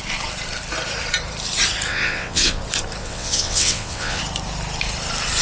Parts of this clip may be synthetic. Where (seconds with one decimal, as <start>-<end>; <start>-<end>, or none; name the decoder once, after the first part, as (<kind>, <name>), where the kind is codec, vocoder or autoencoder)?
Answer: 1.9-2.6 (vocoder, WaveNeXt); 3.0-4.2